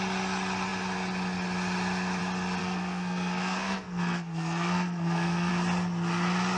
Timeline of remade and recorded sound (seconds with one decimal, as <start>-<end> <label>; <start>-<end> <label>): 0.0-2.6 recorded; 2.6-5.5 remade; 5.5-6.6 recorded